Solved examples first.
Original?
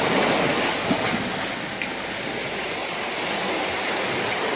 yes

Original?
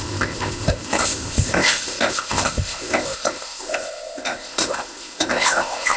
no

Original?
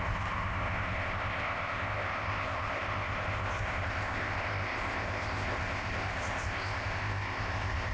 no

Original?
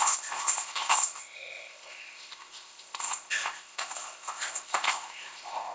no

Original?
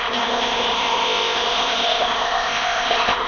no